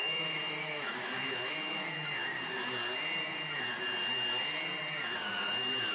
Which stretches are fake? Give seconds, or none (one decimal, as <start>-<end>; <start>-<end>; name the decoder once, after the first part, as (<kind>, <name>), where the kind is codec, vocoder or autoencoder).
0.0-2.2 (autoencoder, DAC-VAE)